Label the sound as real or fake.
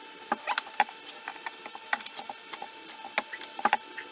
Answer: real